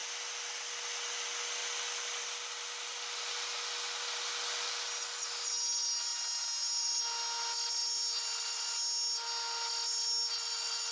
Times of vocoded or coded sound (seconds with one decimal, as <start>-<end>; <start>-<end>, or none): 6.1-7.0